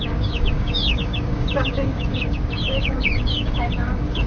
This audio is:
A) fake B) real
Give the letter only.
A